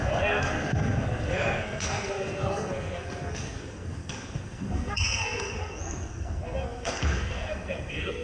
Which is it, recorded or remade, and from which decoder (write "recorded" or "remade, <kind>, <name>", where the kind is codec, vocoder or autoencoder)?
remade, codec, SNAC